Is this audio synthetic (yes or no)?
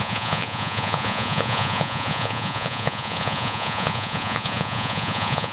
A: yes